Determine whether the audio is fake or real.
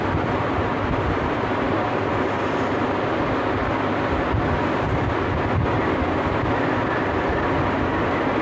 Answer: real